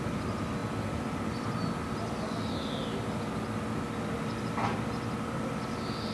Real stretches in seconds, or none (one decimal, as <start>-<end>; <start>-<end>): 0.0-6.1